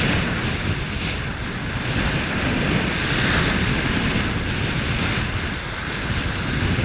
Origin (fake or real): real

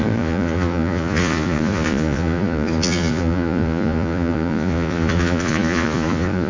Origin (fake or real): fake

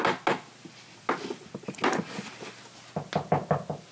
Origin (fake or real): real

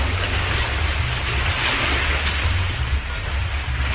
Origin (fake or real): real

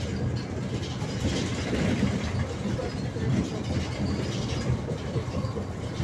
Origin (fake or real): real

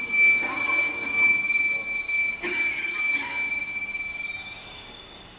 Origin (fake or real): fake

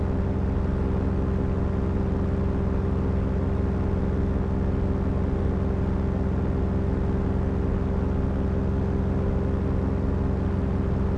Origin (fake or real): real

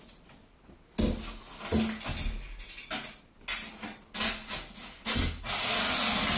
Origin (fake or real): real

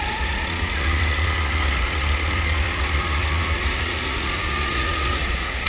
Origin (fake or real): fake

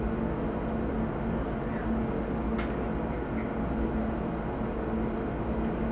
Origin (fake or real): real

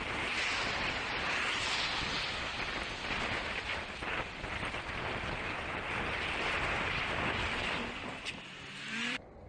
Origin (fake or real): fake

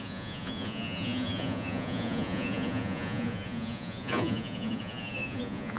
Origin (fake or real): fake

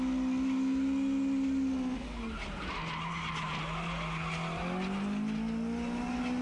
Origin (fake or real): real